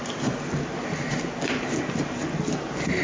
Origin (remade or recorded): recorded